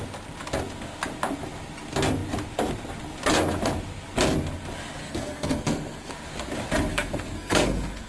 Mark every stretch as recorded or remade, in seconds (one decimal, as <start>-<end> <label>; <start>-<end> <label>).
0.0-5.0 recorded; 5.0-6.1 remade; 6.1-6.9 recorded; 6.9-8.1 remade